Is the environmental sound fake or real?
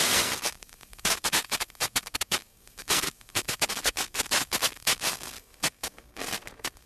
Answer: fake